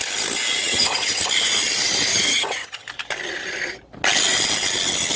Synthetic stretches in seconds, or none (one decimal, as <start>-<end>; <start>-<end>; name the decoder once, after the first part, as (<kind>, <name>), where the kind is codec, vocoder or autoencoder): 0.6-1.2 (vocoder, HiFi-GAN); 2.1-2.9